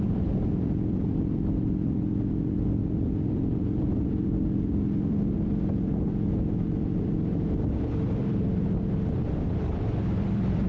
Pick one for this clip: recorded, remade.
remade